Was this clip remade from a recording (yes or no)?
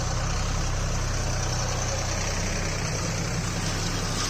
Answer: no